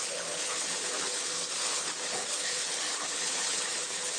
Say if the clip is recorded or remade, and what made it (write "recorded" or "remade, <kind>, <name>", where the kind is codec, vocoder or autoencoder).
remade, codec, HILCodec